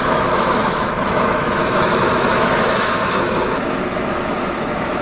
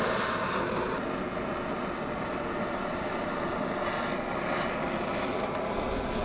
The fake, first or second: first